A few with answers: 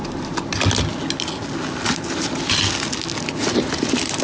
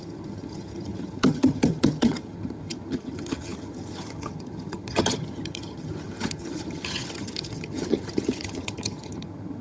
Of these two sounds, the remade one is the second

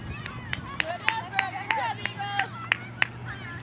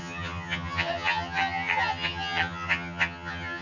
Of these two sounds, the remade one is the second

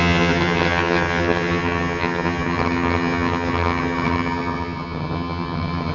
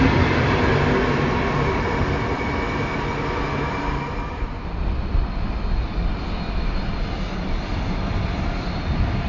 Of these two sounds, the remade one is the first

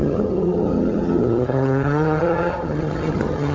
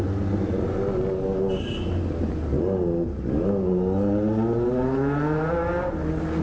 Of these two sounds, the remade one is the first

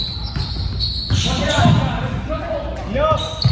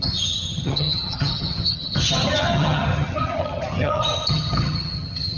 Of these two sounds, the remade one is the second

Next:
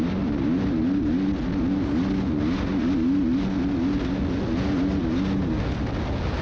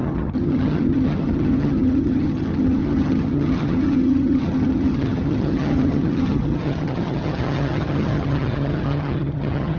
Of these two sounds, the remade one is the second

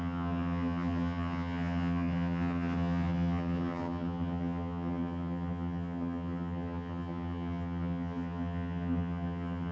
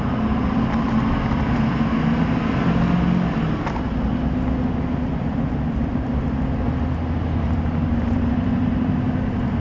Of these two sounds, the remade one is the first